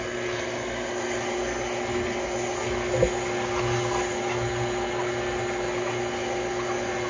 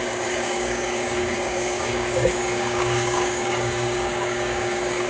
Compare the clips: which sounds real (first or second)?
first